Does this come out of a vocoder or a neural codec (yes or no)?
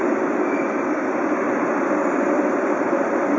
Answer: no